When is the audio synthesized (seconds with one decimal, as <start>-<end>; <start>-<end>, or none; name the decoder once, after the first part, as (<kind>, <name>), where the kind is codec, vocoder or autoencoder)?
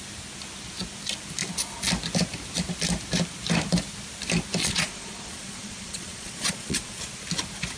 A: 4.6-7.0 (vocoder, Vocos)